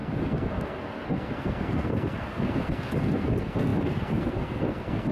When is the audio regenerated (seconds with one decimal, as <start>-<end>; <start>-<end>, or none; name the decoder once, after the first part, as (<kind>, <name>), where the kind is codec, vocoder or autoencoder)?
0.0-5.1 (codec, SNAC)